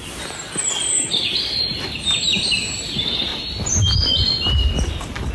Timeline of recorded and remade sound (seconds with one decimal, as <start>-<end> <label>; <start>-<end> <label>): 0.0-5.3 recorded